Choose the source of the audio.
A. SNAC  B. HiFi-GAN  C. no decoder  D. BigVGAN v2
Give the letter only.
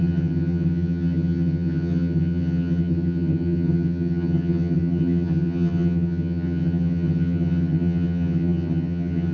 B